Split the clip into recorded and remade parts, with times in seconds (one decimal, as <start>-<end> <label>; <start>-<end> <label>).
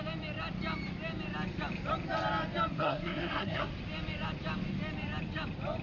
0.0-2.7 recorded; 2.7-3.7 remade; 3.7-5.8 recorded